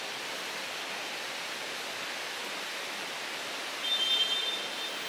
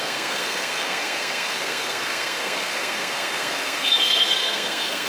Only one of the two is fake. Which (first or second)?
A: second